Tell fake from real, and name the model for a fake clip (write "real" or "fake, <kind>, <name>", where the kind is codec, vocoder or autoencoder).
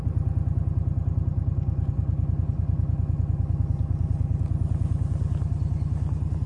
real